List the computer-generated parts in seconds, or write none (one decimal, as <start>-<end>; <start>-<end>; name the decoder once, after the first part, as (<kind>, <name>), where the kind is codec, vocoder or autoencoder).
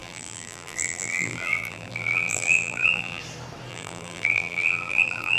0.0-3.2 (vocoder, BigVGAN v2); 3.7-5.4